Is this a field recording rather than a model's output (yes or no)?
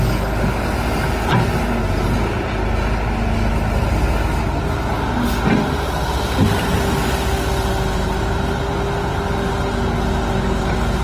yes